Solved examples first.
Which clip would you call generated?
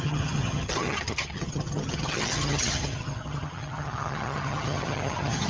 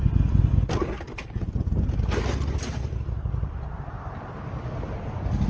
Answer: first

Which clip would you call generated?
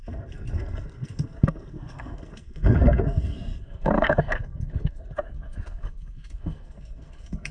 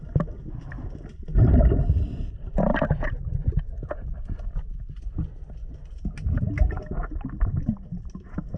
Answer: first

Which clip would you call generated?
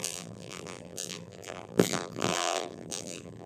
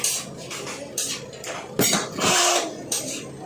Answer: first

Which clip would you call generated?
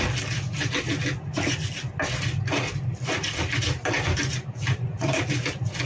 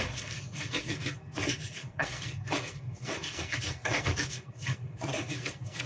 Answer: second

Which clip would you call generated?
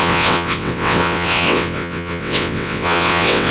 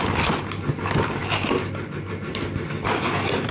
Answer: first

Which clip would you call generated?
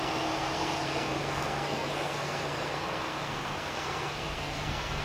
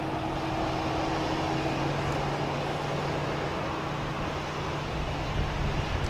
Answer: first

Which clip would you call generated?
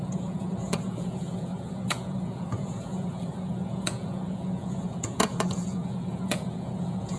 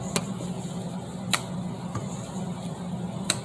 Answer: first